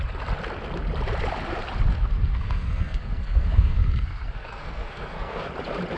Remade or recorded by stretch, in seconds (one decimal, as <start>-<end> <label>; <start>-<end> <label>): 0.0-1.9 recorded; 1.9-5.5 remade; 5.5-6.0 recorded